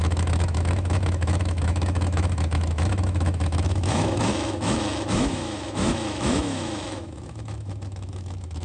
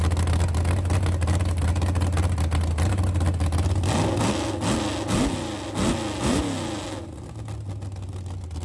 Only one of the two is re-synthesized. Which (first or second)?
first